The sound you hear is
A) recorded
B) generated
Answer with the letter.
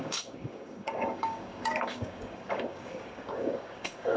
B